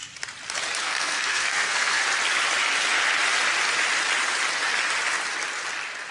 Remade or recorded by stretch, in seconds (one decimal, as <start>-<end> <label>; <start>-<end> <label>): 0.0-0.8 recorded; 0.8-2.0 remade; 2.0-6.1 recorded